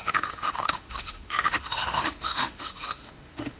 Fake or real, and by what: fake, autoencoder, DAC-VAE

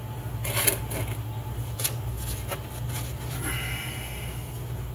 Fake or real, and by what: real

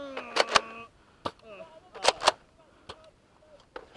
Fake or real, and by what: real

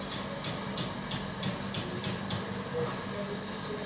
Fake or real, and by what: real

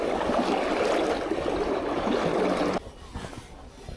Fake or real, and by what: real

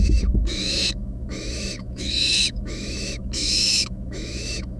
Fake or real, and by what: fake, autoencoder, DAC-VAE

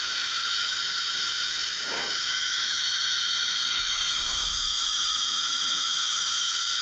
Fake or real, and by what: fake, autoencoder, DAC-VAE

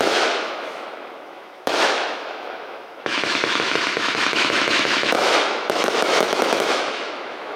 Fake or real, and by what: fake, autoencoder, DAC-VAE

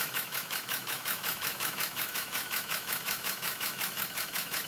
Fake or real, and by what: fake, autoencoder, DAC-VAE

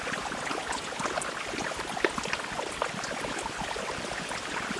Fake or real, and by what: real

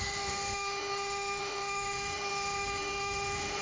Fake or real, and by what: fake, autoencoder, DAC-VAE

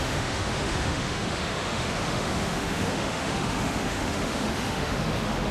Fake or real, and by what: fake, autoencoder, DAC-VAE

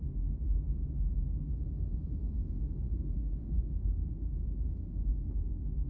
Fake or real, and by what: fake, autoencoder, DAC-VAE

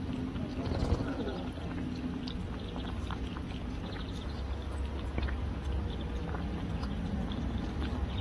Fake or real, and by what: real